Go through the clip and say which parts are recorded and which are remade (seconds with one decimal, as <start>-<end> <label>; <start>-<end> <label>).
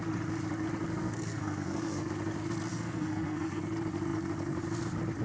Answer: 0.0-0.9 recorded; 0.9-2.1 remade; 2.1-2.7 recorded; 2.7-3.6 remade; 3.6-5.2 recorded